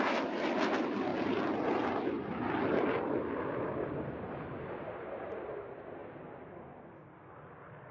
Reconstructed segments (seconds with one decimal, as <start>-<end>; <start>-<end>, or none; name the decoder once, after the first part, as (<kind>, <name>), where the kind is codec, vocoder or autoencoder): none